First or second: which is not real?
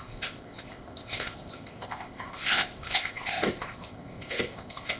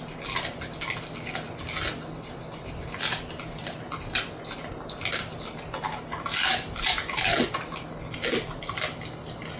first